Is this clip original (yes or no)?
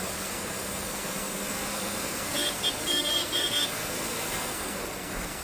no